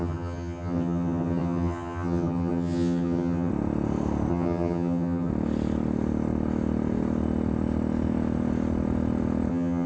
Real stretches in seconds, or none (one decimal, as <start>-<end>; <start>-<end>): 3.5-4.3; 5.3-9.5